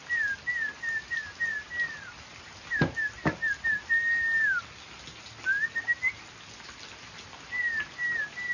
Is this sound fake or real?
real